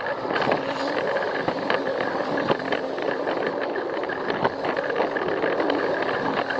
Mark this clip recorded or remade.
recorded